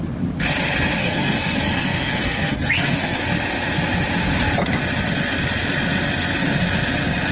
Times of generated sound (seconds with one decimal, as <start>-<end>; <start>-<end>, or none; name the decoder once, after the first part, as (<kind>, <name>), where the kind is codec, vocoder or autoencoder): 1.0-3.2 (codec, SNAC)

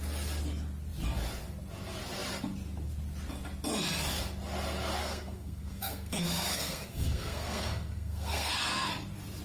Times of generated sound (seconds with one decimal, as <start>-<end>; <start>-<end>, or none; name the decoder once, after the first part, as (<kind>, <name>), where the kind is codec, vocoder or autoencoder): 5.0-8.9 (codec, SNAC)